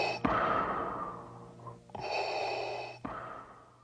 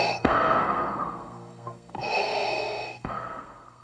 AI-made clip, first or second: second